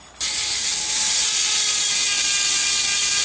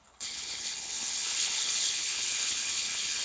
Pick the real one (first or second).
first